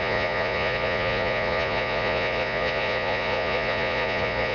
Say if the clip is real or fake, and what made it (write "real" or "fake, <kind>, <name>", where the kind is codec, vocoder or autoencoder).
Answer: fake, vocoder, Vocos